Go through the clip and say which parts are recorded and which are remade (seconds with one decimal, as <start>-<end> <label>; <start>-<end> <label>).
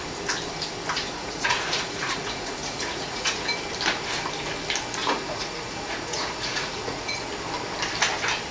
0.0-1.2 recorded; 1.2-3.5 remade; 3.5-5.0 recorded; 5.0-7.3 remade; 7.3-8.5 recorded